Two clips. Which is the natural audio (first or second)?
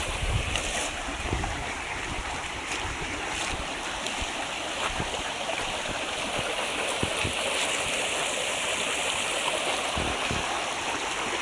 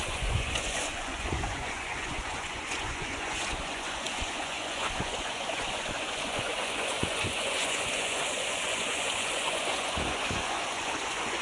first